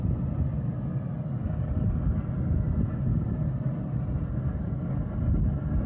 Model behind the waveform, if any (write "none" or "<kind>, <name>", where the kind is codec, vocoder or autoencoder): none